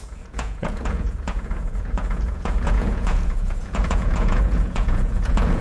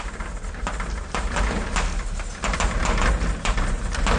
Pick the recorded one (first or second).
second